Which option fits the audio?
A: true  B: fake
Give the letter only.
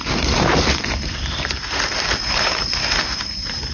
B